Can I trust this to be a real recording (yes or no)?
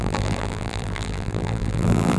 no